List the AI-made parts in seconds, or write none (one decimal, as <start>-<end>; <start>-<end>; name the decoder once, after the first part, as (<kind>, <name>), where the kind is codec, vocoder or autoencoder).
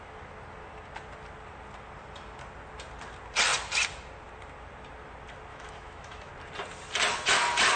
5.5-6.3 (autoencoder, DAC-VAE)